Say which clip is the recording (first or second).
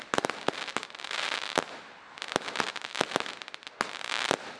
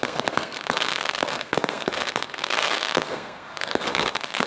first